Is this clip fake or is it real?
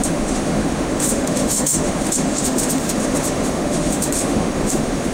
fake